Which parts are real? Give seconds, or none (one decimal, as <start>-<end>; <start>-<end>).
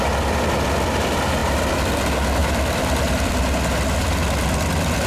0.0-1.4; 2.0-2.4; 3.4-5.1